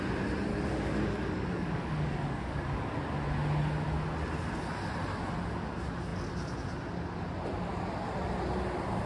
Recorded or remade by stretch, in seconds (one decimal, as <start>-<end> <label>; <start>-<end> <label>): 0.0-0.5 recorded; 0.5-2.9 remade; 2.9-9.1 recorded